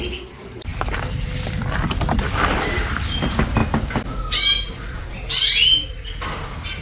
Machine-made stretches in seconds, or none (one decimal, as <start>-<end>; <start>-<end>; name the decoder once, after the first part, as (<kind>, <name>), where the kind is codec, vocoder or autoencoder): none